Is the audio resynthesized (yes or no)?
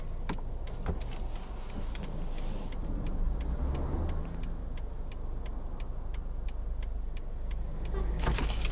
no